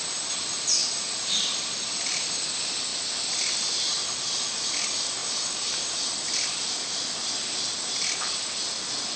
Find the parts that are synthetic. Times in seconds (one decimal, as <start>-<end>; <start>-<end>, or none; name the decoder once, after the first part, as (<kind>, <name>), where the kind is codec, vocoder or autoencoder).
none